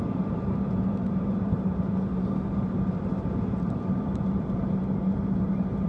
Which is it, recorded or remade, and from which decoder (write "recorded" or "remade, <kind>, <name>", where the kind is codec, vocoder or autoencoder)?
remade, vocoder, BigVGAN v2